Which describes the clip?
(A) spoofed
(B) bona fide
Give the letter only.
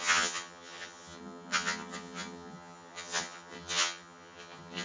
A